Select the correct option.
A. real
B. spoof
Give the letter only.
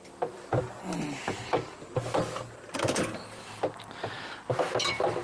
A